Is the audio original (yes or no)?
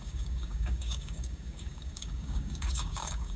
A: no